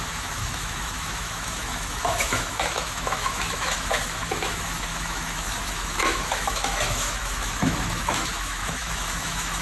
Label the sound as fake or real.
fake